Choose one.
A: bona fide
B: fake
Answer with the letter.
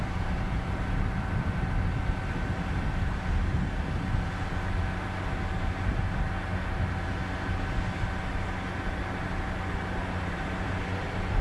A